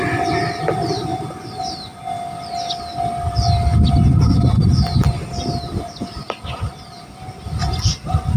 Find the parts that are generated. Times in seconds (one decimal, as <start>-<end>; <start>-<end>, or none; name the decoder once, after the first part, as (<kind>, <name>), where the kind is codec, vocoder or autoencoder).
none

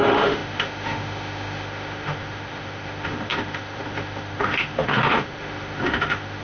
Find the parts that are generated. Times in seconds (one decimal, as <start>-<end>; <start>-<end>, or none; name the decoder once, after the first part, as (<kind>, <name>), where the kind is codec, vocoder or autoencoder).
0.0-6.4 (autoencoder, DAC-VAE)

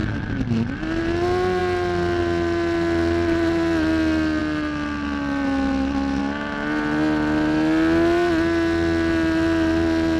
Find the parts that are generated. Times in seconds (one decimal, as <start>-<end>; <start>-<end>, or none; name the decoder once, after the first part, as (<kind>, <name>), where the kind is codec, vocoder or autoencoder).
none

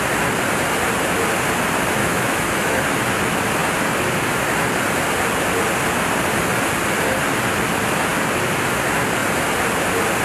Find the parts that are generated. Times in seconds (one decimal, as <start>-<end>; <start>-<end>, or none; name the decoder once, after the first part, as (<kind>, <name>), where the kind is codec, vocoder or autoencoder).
2.0-2.8 (autoencoder, DAC-VAE)

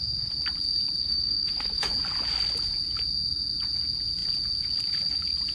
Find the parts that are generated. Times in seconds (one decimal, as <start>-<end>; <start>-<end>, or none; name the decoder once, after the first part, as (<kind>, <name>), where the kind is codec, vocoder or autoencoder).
1.0-1.9 (autoencoder, DAC-VAE)